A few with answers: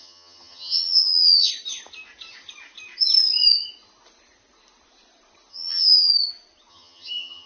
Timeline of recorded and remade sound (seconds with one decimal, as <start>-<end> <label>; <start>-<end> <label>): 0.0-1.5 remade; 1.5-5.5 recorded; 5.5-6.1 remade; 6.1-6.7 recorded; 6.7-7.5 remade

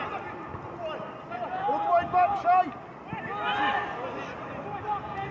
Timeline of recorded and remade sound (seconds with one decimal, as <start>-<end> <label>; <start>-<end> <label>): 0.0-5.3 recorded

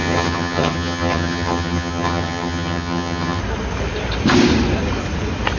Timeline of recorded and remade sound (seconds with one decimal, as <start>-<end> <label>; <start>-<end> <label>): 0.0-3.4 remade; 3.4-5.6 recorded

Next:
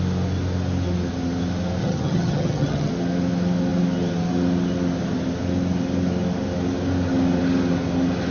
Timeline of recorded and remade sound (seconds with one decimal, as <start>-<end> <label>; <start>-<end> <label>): 0.0-1.8 recorded; 1.8-2.9 remade; 2.9-8.3 recorded

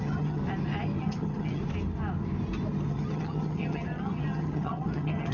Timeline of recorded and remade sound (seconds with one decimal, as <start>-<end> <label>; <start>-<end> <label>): 0.0-0.4 remade; 0.4-1.0 recorded; 1.0-1.6 remade; 1.6-2.9 recorded; 2.9-5.3 remade

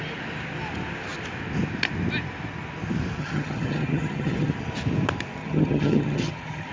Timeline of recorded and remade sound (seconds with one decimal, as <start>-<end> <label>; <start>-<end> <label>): 0.0-3.2 recorded; 3.2-4.5 remade; 4.5-5.4 recorded; 5.4-6.7 remade